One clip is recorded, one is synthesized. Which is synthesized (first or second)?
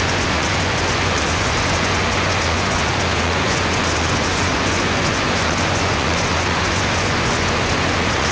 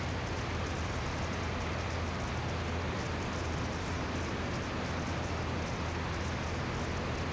first